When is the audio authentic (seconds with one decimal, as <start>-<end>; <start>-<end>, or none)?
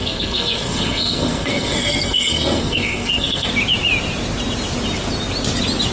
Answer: 3.5-5.9